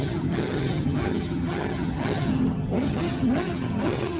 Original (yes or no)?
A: no